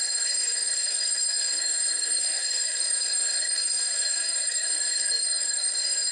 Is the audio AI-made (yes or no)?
yes